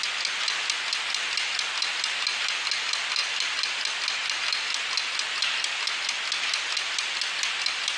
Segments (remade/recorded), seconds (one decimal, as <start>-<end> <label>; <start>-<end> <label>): 0.0-8.0 recorded